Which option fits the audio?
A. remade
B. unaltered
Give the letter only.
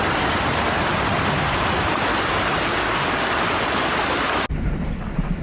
B